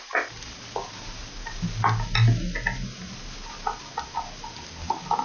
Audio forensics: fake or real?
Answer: real